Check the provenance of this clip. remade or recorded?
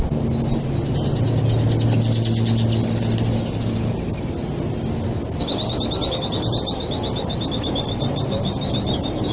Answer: recorded